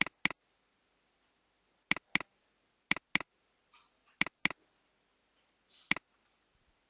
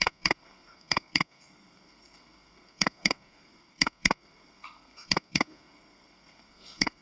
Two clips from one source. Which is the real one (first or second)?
first